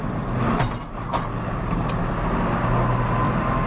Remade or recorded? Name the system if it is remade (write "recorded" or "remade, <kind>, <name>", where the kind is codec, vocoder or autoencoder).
recorded